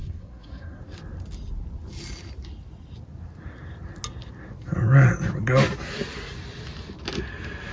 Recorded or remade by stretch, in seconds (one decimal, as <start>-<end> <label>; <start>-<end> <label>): 0.0-0.8 remade; 0.8-7.7 recorded